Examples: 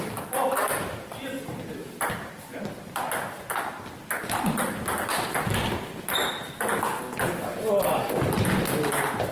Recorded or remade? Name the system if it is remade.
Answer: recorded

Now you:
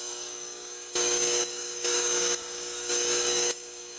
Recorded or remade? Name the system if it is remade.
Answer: remade, codec, DAC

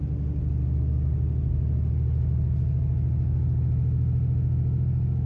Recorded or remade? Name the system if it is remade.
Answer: recorded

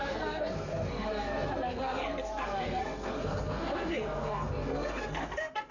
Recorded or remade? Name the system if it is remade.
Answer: remade, codec, SNAC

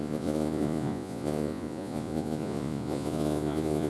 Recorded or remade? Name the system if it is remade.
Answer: remade, vocoder, Vocos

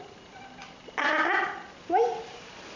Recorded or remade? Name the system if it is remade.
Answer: recorded